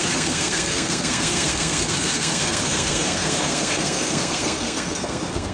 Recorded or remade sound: remade